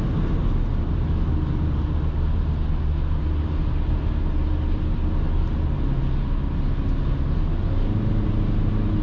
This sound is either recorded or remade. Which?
recorded